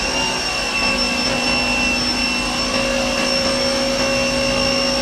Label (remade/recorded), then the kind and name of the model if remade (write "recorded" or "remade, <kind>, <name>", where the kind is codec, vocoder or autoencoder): recorded